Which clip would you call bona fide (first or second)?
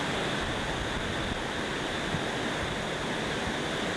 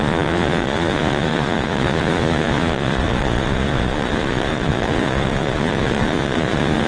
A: first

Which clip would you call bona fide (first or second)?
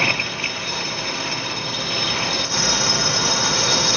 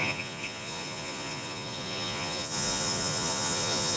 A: first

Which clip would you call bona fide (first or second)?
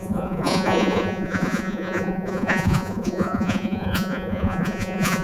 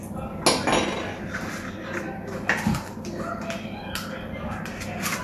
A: second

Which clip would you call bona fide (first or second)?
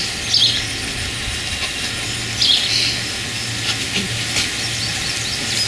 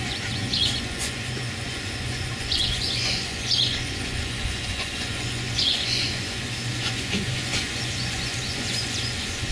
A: first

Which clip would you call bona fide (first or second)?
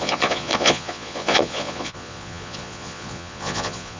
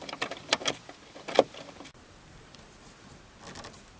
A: second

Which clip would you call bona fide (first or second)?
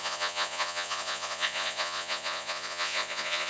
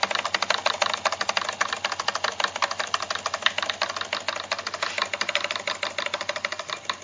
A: second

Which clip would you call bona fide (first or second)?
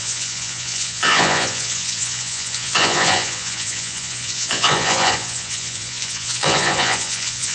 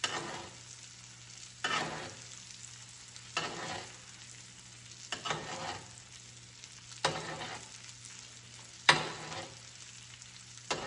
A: second